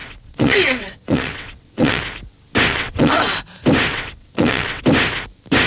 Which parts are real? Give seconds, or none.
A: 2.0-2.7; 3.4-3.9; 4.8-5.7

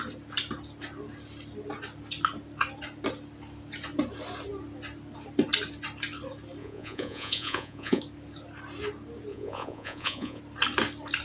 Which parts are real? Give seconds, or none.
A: 0.0-6.6; 8.0-9.3; 10.4-11.2

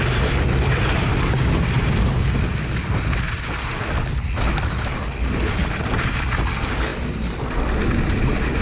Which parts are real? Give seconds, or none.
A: 0.0-8.6

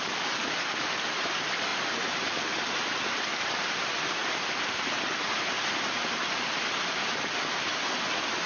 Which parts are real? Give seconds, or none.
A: 0.0-8.5

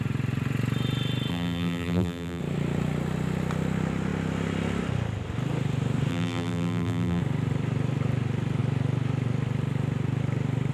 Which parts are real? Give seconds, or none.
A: 0.0-1.3; 2.4-6.1; 7.2-10.7

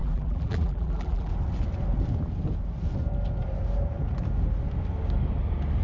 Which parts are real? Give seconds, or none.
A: 1.3-5.8

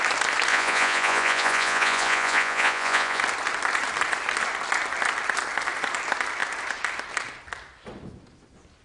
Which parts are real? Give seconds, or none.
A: 0.0-0.5; 3.2-8.8